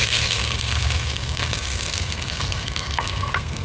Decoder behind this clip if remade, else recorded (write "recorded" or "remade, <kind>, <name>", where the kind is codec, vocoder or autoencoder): remade, codec, SNAC